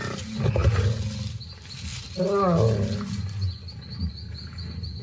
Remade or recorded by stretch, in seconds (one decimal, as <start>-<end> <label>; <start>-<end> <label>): 0.0-5.0 recorded